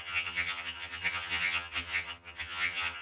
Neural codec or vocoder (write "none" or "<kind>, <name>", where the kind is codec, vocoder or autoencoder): vocoder, HiFi-GAN